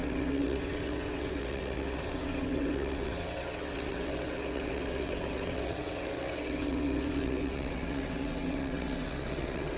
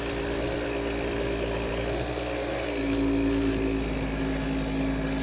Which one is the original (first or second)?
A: second